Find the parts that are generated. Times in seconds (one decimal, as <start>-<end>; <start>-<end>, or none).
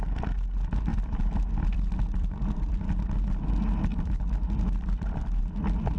0.9-2.9; 3.9-5.4